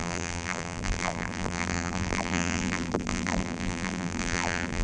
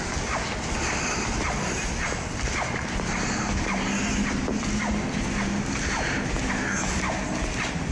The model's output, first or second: first